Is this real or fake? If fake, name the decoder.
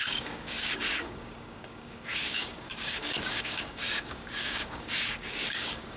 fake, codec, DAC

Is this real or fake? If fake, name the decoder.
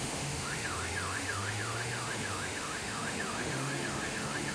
fake, autoencoder, DAC-VAE